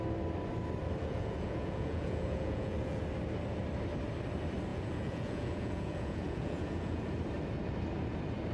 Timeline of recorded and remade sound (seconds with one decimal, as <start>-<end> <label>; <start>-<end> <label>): 0.0-1.0 recorded; 1.0-3.0 remade; 3.0-4.7 recorded; 4.7-7.1 remade; 7.1-8.5 recorded

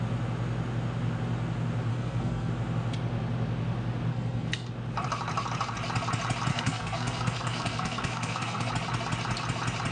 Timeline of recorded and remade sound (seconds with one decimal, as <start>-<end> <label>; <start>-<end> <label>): 0.0-1.9 recorded; 1.9-2.5 remade; 2.5-4.1 recorded; 4.1-4.7 remade; 4.7-6.5 recorded; 6.5-8.7 remade; 8.7-9.9 recorded